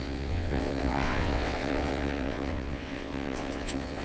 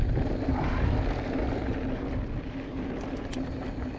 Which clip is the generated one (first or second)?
first